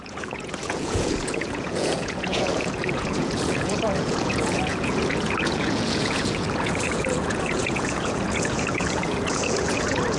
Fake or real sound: fake